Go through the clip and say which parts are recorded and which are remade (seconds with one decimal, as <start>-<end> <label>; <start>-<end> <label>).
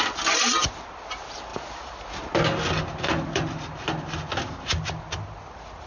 0.0-5.9 recorded